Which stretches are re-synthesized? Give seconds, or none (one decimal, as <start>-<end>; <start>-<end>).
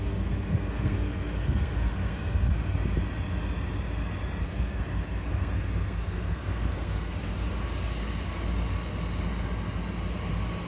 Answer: 0.0-2.6; 4.4-7.3